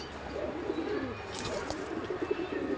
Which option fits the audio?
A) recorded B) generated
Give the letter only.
A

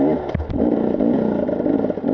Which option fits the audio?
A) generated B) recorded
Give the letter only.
B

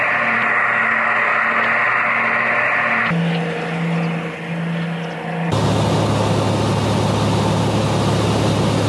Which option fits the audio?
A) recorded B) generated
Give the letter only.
A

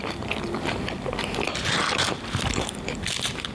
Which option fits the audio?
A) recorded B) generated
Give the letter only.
B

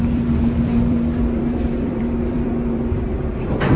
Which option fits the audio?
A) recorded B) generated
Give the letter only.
B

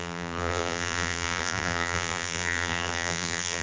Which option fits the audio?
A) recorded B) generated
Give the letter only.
B